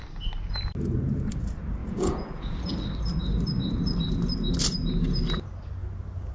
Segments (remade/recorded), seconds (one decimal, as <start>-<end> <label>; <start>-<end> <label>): 0.0-1.8 recorded; 1.8-2.6 remade; 2.6-6.3 recorded